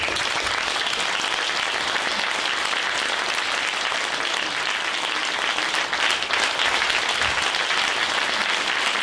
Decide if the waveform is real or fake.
real